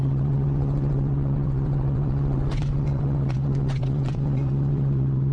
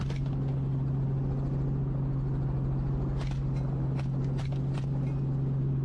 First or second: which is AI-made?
first